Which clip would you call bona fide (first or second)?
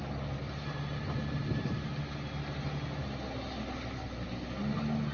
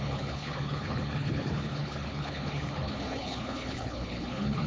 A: first